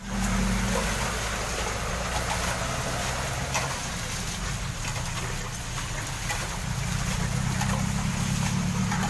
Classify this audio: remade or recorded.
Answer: recorded